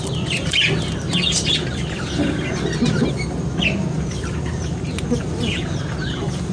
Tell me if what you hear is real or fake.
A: real